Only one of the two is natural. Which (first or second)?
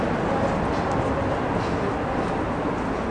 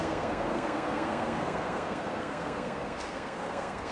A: first